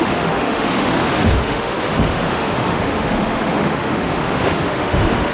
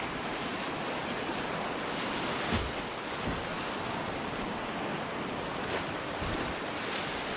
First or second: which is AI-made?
first